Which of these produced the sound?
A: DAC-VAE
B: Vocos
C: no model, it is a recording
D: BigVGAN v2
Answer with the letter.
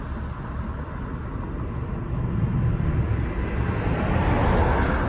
C